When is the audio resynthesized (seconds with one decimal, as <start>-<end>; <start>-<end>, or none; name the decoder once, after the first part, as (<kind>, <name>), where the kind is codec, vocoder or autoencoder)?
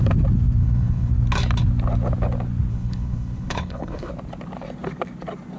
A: 0.6-1.1 (codec, HILCodec); 2.7-4.1